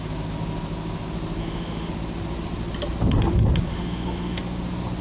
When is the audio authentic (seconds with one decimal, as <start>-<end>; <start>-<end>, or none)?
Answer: 0.0-1.4; 1.9-3.7; 4.4-5.0